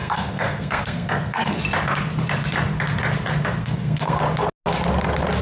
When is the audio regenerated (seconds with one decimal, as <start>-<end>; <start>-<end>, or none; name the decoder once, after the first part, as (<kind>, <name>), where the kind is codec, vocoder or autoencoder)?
0.0-1.6 (codec, SNAC); 3.6-4.2